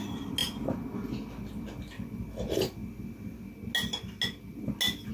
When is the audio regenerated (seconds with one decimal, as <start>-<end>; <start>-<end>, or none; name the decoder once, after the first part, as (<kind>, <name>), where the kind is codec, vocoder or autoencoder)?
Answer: none

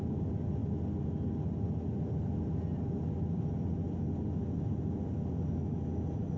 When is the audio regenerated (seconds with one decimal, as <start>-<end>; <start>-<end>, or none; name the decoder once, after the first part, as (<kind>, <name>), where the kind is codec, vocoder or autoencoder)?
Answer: none